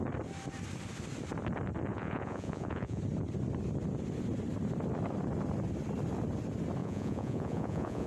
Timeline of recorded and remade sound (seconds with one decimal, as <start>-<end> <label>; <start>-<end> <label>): 0.0-1.9 recorded; 1.9-3.0 remade; 3.0-6.8 recorded; 6.8-8.1 remade